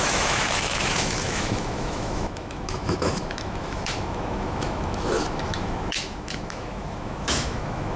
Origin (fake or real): fake